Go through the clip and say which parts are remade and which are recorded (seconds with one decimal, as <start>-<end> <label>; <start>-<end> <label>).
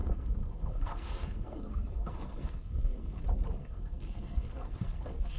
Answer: 0.0-3.2 remade; 3.2-3.6 recorded; 3.6-5.4 remade